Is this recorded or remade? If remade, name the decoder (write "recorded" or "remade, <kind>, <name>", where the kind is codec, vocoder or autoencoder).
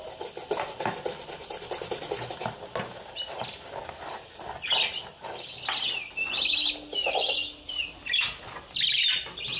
recorded